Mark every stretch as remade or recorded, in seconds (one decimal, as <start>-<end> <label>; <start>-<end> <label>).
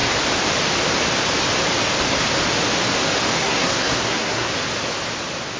0.0-3.4 recorded; 3.4-4.5 remade; 4.5-5.6 recorded